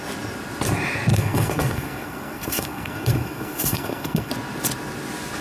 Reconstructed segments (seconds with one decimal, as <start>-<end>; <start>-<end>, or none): 1.1-4.3